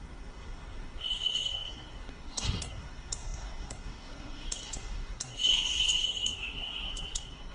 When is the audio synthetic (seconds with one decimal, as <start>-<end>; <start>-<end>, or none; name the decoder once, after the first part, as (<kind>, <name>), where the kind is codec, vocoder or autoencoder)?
0.0-7.5 (codec, SNAC)